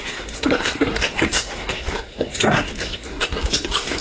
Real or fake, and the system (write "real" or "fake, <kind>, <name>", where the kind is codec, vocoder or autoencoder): fake, codec, SNAC